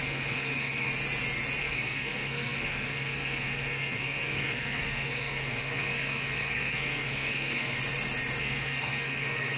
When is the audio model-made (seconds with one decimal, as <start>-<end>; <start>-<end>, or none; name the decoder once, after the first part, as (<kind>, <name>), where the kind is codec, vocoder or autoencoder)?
0.0-0.9 (codec, SNAC); 1.6-7.8; 8.4-9.6